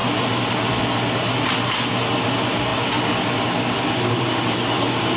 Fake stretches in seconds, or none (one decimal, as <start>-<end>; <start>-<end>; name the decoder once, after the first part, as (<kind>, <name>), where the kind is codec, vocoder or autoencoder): none